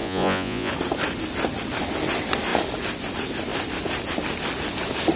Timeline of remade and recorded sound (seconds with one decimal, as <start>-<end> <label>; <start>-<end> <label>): 0.0-0.7 remade; 0.7-5.2 recorded